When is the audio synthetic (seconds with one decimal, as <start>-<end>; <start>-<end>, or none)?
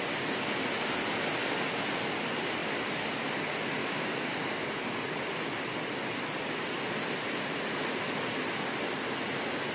3.8-4.7